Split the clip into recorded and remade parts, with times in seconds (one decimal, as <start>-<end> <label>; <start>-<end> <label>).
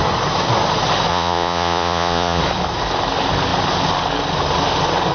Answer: 0.0-1.1 recorded; 1.1-2.4 remade; 2.4-5.1 recorded